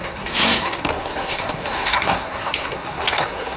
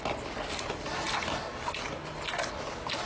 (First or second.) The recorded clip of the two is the second